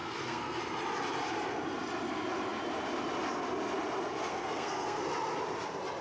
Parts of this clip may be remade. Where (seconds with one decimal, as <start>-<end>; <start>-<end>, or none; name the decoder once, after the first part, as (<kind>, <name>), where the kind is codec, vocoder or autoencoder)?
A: 0.0-0.6 (codec, SNAC); 4.3-5.0